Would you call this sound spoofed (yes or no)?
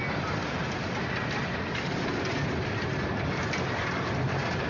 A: no